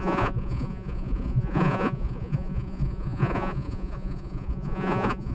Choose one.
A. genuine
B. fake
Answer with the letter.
B